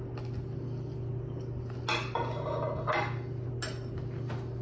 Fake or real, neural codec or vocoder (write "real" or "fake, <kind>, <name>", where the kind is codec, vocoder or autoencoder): real